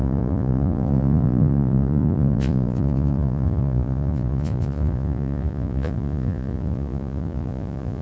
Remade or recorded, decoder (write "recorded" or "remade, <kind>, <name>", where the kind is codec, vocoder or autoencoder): remade, vocoder, Vocos